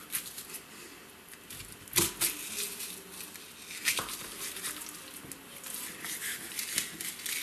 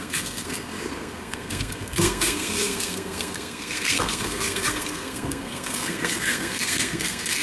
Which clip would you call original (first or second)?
first